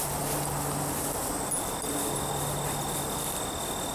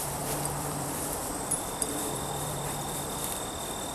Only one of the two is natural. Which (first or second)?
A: first